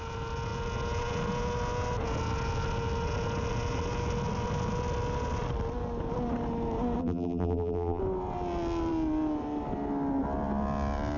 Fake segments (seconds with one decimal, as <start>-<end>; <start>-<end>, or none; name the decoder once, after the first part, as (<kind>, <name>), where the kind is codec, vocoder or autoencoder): 7.0-8.0 (vocoder, BigVGAN v2)